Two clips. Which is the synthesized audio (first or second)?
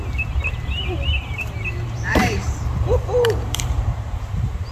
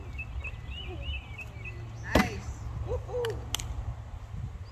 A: first